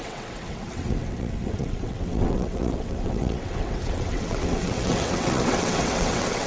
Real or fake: fake